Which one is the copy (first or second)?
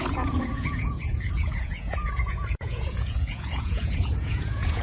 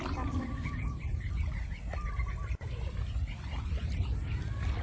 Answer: first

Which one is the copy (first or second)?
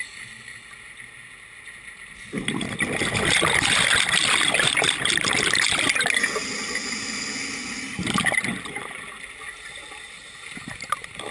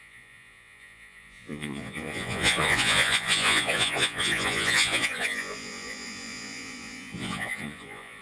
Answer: second